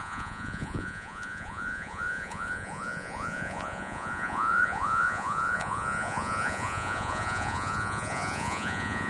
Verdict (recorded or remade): remade